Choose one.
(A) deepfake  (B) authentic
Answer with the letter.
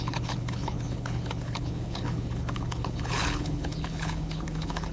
A